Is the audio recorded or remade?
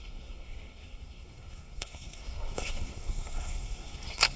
remade